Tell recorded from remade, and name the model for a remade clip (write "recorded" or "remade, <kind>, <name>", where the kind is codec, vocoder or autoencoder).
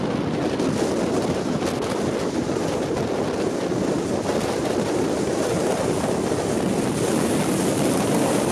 recorded